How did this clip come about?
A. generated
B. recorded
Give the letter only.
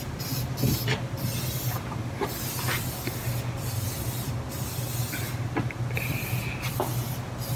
B